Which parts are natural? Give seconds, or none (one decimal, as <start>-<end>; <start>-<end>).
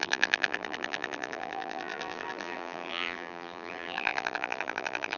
none